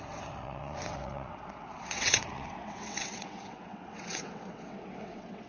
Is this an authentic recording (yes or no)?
no